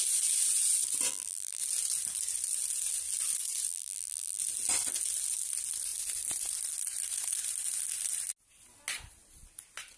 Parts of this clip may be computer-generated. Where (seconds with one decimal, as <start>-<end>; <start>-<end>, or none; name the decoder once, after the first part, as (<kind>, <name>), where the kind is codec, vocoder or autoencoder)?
1.1-1.6 (vocoder, BigVGAN v2); 3.7-4.4